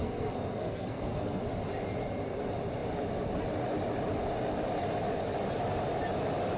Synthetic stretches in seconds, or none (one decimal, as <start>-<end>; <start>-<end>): 0.0-1.4